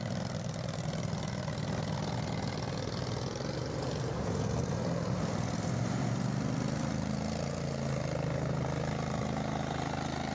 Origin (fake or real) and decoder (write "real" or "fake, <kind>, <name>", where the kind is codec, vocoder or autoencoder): real